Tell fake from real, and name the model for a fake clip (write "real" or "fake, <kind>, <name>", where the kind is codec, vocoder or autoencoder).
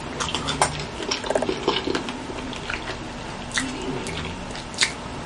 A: real